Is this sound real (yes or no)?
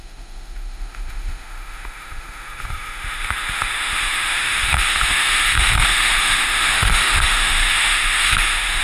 no